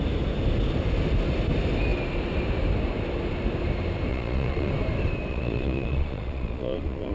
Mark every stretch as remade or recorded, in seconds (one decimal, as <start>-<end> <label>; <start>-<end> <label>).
0.0-4.1 recorded; 4.1-4.7 remade; 4.7-5.3 recorded; 5.3-7.1 remade